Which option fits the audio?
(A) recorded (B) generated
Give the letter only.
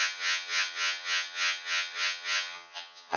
B